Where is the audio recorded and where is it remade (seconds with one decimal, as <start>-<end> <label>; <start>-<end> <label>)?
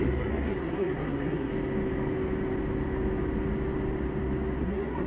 0.0-1.5 remade; 1.5-4.6 recorded; 4.6-5.1 remade